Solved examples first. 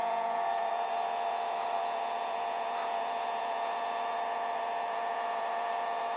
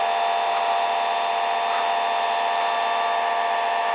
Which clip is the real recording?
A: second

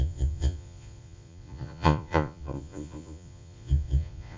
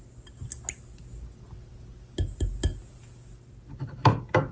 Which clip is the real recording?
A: second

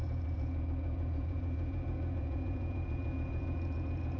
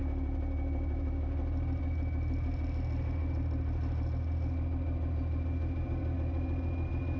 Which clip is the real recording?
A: second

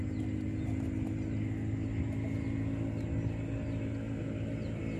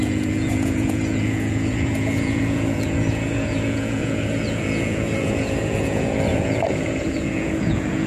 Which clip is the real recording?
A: first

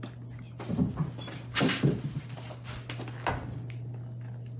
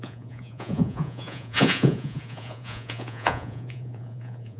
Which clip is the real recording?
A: first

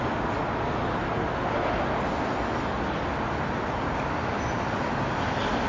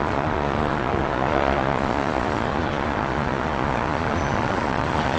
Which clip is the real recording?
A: first